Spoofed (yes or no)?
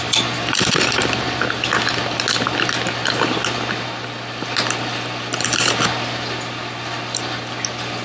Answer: no